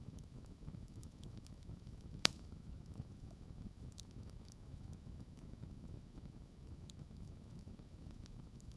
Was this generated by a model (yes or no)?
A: yes